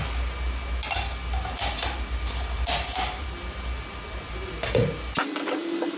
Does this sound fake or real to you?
real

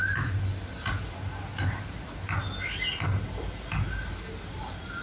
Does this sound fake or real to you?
real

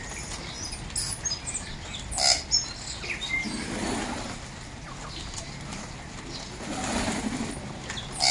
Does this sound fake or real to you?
real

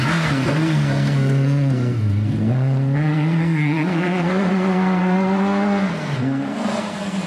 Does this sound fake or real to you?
fake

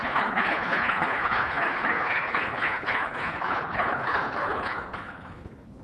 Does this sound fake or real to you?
fake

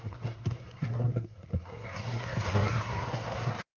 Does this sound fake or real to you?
fake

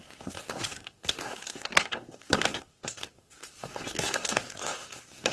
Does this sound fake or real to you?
fake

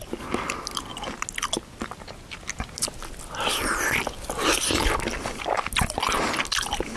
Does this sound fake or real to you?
real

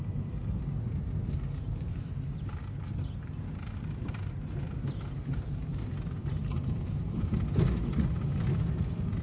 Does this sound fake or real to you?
real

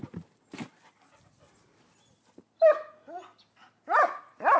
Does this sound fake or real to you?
real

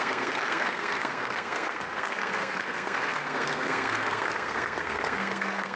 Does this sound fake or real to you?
fake